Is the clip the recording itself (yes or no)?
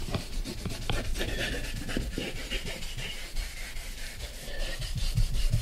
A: no